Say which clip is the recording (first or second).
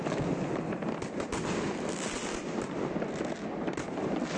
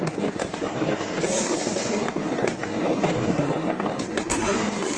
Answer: first